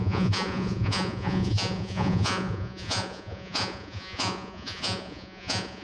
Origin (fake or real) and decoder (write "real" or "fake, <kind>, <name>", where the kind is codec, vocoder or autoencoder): fake, vocoder, Vocos